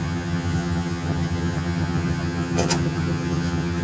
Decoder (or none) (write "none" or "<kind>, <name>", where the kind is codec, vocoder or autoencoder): vocoder, HiFi-GAN